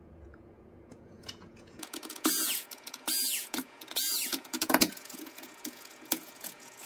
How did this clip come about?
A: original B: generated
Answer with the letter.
B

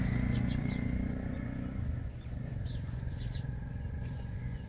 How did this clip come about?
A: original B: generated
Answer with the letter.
B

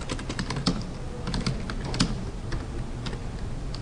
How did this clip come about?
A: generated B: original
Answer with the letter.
B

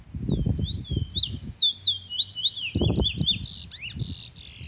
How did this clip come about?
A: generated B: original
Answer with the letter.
B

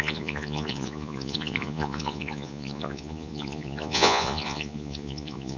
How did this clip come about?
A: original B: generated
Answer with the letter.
B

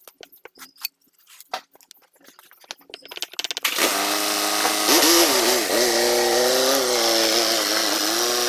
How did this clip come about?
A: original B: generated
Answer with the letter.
A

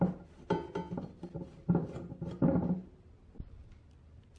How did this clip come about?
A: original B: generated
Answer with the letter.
A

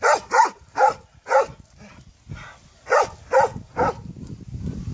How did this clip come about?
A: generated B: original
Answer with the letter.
B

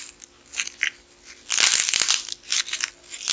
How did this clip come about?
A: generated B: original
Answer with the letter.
B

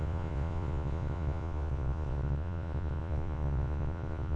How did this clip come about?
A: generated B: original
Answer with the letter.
A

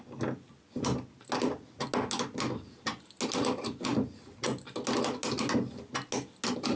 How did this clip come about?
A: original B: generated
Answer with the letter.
A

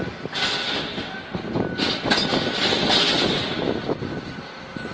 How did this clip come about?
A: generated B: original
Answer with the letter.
B